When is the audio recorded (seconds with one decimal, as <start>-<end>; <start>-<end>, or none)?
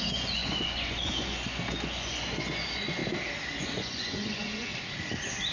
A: 3.0-3.6; 4.7-5.5